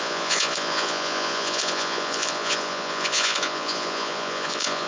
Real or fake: fake